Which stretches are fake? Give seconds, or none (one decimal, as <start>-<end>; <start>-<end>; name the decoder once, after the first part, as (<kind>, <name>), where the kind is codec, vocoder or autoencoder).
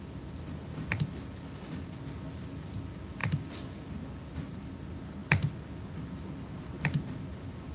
none